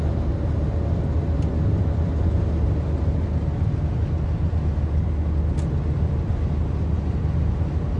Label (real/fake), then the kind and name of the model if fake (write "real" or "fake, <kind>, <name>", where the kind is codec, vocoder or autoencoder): real